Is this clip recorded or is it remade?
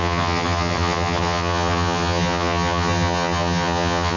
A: remade